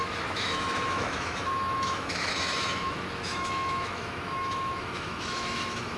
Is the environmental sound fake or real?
fake